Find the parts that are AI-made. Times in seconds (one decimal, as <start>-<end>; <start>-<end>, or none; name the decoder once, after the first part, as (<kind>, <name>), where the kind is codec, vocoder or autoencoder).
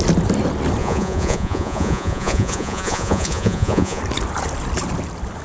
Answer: 0.8-4.0 (vocoder, Vocos)